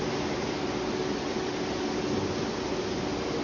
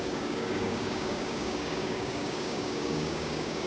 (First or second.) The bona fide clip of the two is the first